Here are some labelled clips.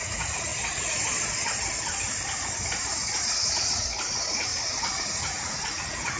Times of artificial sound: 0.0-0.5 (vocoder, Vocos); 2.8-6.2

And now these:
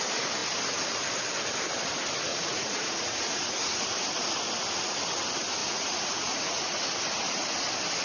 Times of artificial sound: 2.3-3.8 (vocoder, Vocos); 5.6-6.8

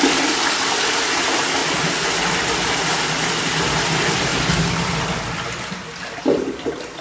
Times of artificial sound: none